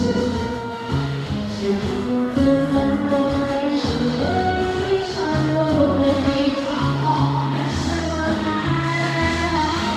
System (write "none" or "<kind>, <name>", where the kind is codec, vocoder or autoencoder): autoencoder, DAC-VAE